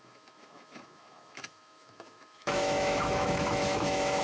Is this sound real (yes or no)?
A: no